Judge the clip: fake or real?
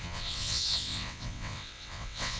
fake